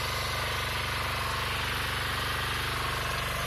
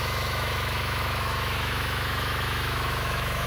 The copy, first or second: second